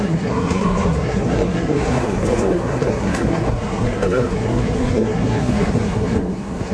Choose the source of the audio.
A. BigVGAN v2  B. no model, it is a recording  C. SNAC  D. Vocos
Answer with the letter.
C